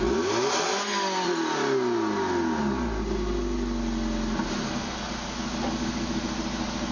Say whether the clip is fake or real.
real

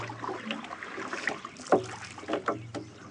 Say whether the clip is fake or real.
real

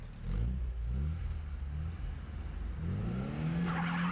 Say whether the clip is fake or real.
real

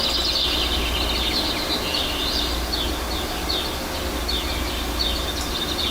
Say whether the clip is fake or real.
real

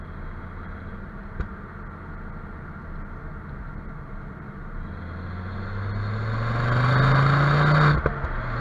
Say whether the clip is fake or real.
real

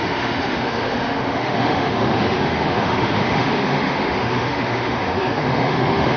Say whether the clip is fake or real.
fake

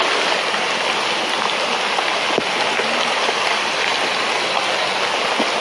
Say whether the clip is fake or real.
real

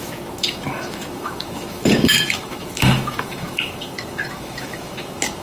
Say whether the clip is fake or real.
fake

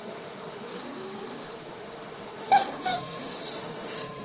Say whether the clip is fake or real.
fake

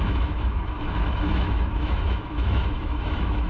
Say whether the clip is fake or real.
fake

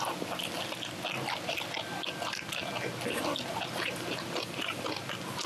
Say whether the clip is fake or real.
real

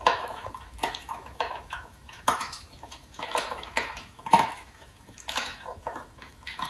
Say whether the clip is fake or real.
fake